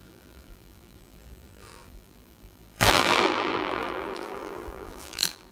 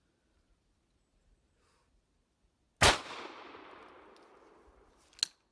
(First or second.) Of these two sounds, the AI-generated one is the first